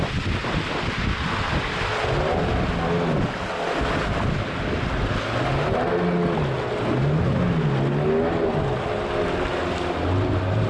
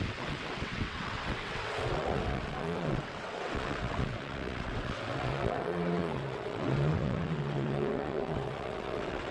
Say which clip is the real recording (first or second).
first